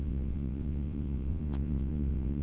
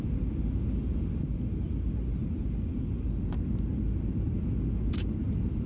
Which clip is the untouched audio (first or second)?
second